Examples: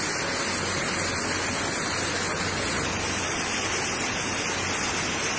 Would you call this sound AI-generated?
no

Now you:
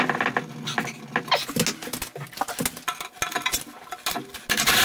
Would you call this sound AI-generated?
no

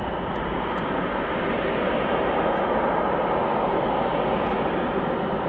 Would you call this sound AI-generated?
no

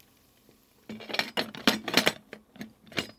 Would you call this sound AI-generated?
no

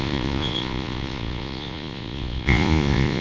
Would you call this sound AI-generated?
yes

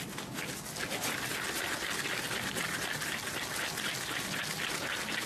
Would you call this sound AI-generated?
no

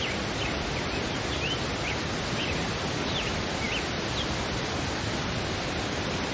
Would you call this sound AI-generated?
no